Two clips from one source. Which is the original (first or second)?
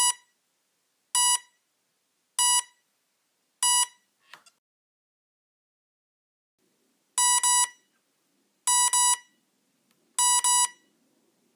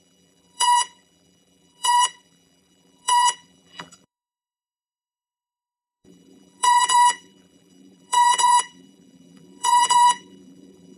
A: first